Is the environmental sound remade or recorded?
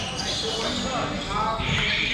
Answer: recorded